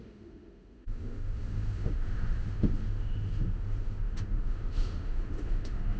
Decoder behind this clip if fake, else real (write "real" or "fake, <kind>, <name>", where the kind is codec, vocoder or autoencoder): fake, autoencoder, DAC-VAE